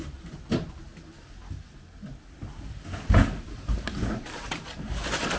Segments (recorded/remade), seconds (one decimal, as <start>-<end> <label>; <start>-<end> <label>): 0.0-0.9 remade; 0.9-4.1 recorded; 4.1-5.4 remade